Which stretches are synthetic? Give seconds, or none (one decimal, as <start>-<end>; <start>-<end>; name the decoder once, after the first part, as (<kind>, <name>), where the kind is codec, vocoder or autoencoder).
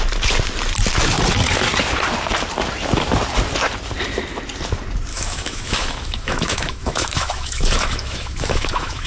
5.1-9.1 (autoencoder, DAC-VAE)